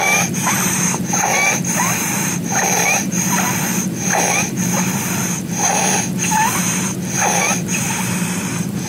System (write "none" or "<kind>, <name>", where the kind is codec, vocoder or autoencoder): vocoder, BigVGAN v2